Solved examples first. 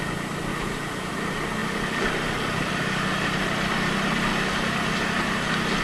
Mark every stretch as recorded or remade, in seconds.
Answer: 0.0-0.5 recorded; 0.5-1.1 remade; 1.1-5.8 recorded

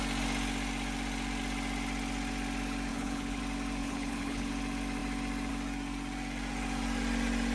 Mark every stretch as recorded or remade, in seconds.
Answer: 0.0-2.9 recorded; 2.9-3.4 remade; 3.4-3.8 recorded; 3.8-4.5 remade; 4.5-7.5 recorded

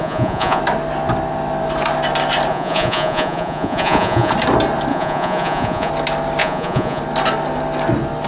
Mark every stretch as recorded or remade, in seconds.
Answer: 0.0-0.6 remade; 0.6-2.5 recorded; 2.5-4.3 remade; 4.3-4.9 recorded; 4.9-5.9 remade; 5.9-6.4 recorded; 6.4-7.0 remade; 7.0-8.3 recorded

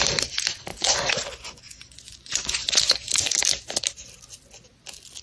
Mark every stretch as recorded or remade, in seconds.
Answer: 0.0-0.7 recorded; 0.7-3.1 remade; 3.1-5.2 recorded